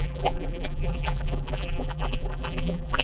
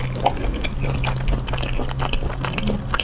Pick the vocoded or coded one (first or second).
first